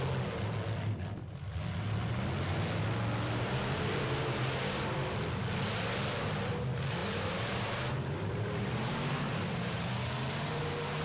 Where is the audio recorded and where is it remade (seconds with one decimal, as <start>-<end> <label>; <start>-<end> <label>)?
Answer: 0.0-7.0 recorded; 7.0-11.0 remade